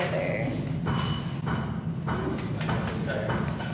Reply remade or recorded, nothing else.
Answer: recorded